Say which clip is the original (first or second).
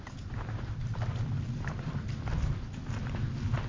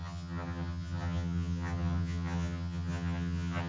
first